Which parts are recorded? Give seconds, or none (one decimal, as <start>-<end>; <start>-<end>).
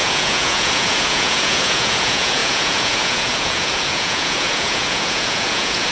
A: none